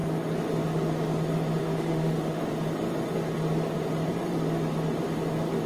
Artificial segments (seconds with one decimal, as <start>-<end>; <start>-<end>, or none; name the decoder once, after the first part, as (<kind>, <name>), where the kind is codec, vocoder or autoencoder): 1.6-2.4 (autoencoder, DAC-VAE)